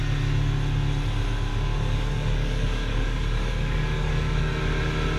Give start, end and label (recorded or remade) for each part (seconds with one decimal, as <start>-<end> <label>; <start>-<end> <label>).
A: 0.0-1.5 recorded; 1.5-4.6 remade; 4.6-5.2 recorded

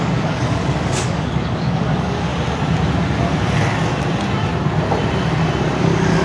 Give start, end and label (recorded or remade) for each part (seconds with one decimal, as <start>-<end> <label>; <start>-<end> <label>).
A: 0.0-2.3 remade; 2.3-5.8 recorded; 5.8-6.2 remade

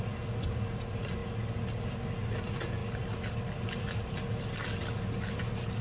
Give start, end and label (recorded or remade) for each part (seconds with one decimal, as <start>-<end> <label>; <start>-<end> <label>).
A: 0.0-5.8 recorded

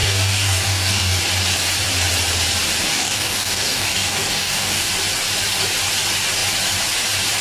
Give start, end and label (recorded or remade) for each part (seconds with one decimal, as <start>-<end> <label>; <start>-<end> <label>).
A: 0.0-1.2 remade; 1.2-2.9 recorded; 2.9-4.9 remade; 4.9-7.4 recorded

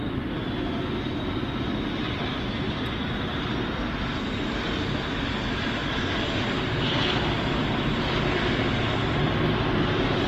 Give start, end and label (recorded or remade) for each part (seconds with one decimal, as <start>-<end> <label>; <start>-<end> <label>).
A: 0.0-10.3 recorded

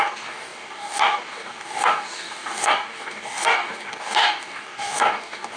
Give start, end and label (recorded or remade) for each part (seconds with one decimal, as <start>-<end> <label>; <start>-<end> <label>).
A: 0.0-5.6 remade

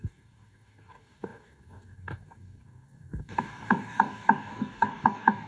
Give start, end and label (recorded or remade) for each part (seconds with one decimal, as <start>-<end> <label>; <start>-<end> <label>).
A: 0.0-5.5 remade

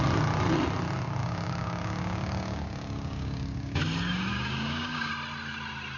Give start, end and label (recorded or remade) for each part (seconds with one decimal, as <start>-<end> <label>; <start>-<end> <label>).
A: 0.0-1.2 recorded; 1.2-3.8 remade; 3.8-4.3 recorded; 4.3-5.1 remade; 5.1-6.0 recorded